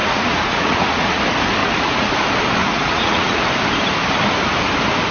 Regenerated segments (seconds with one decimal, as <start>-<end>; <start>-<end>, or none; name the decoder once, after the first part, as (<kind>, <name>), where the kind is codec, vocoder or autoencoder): 0.0-1.2 (vocoder, Vocos); 1.6-2.1; 2.6-3.4